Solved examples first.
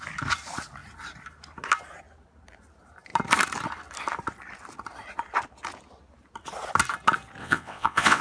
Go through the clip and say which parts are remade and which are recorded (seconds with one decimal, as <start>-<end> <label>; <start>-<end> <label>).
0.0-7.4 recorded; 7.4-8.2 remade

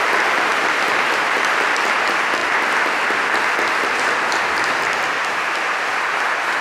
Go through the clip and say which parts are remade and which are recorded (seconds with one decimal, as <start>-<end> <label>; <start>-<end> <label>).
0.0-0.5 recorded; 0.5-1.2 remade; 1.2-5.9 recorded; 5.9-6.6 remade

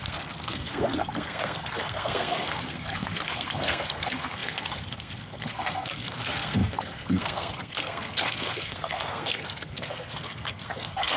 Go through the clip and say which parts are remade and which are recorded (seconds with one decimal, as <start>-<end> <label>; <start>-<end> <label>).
0.0-11.2 remade

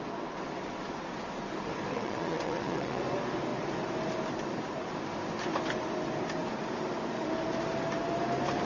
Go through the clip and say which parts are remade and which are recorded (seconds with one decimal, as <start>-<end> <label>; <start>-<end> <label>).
0.0-1.9 recorded; 1.9-3.0 remade; 3.0-8.6 recorded

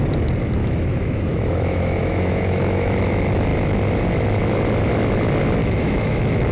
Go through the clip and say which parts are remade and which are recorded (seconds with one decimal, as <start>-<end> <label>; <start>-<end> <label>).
0.0-0.6 recorded; 0.6-3.1 remade; 3.1-5.6 recorded; 5.6-6.5 remade

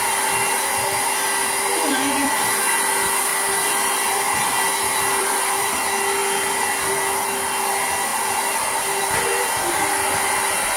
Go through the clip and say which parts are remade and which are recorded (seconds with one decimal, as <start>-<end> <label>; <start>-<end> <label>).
0.0-1.4 recorded; 1.4-2.3 remade; 2.3-3.3 recorded; 3.3-5.7 remade; 5.7-8.1 recorded; 8.1-9.0 remade; 9.0-10.8 recorded